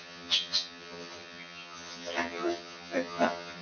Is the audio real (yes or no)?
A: no